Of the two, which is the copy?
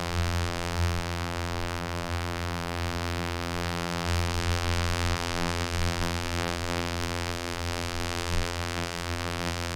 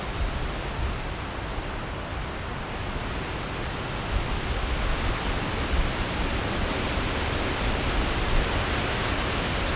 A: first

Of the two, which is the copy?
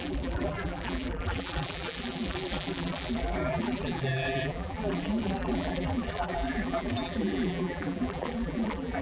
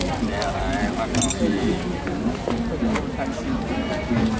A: first